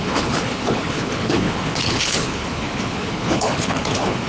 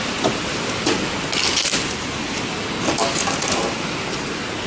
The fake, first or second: first